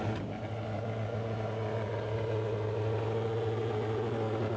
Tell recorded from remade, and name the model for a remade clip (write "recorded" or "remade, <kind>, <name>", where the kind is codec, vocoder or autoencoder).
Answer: recorded